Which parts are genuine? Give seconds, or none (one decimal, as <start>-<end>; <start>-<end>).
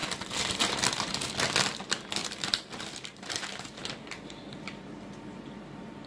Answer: 0.0-2.2; 2.7-6.1